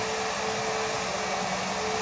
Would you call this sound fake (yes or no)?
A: no